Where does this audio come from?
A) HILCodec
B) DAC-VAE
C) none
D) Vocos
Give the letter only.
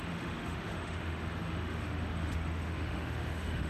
B